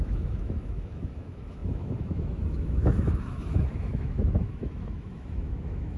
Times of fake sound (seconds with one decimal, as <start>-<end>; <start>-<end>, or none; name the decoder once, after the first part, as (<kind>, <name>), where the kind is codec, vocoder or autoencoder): 0.0-6.0 (autoencoder, DAC-VAE)